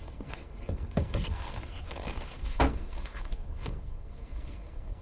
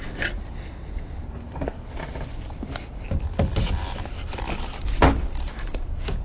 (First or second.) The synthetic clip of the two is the first